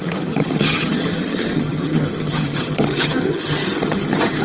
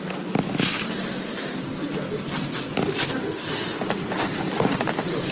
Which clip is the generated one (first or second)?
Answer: first